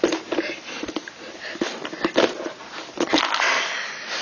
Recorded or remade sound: recorded